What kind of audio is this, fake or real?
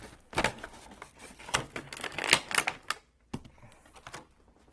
real